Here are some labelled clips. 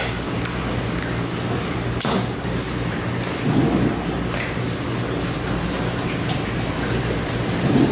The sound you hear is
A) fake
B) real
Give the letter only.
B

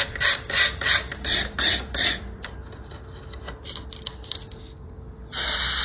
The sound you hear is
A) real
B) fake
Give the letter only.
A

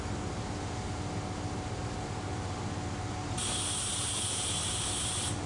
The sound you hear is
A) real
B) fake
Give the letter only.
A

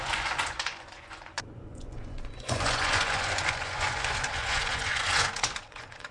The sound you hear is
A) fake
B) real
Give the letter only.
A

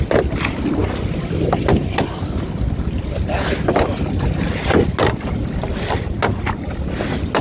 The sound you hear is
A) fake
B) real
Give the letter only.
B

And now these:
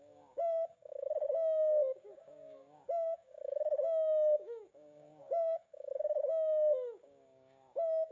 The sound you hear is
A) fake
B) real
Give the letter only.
A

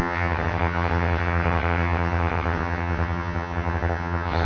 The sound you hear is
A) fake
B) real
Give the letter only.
A